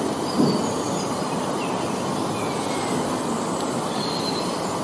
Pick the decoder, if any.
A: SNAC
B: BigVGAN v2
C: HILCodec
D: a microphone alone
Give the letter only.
D